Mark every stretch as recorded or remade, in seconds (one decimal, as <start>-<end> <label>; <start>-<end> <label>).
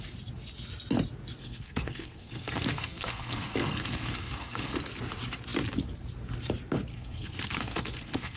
0.0-1.4 recorded; 1.4-4.8 remade; 4.8-6.9 recorded; 6.9-8.4 remade